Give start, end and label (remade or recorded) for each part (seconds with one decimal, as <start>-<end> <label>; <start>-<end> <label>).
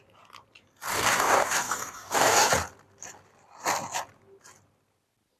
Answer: 0.0-0.9 recorded; 0.9-2.5 remade; 2.5-5.4 recorded